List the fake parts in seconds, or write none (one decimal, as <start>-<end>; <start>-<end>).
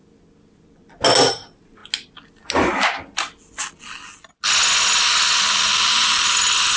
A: 1.3-1.8; 5.9-6.8